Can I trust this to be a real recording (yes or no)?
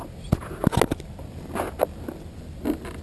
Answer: yes